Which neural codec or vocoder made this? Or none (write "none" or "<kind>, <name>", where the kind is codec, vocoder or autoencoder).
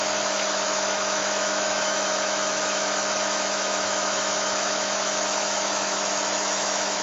autoencoder, DAC-VAE